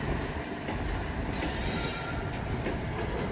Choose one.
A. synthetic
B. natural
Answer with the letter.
B